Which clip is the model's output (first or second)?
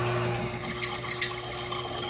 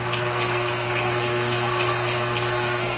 second